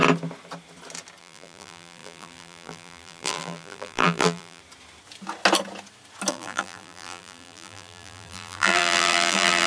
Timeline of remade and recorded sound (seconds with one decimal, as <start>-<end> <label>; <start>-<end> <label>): 0.0-1.2 recorded; 1.2-4.6 remade; 4.6-6.3 recorded; 6.3-9.7 remade